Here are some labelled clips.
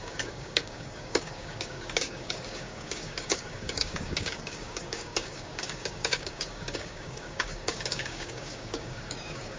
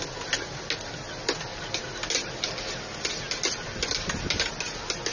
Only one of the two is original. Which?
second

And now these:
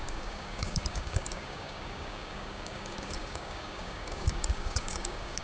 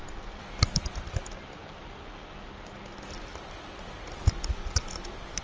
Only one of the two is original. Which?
second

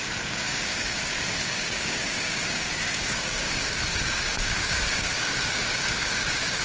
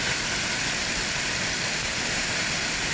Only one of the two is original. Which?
second